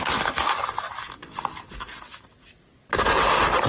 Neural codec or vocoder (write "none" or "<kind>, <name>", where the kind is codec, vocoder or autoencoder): none